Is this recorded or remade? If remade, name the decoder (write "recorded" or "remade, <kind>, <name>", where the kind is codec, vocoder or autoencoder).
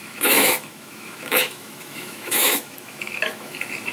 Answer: remade, autoencoder, DAC-VAE